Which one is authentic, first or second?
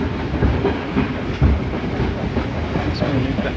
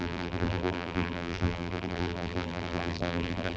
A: first